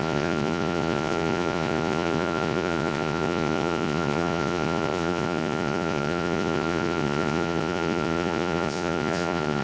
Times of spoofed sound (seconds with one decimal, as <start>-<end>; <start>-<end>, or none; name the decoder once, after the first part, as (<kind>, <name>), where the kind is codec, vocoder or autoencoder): 0.0-9.6 (vocoder, Vocos)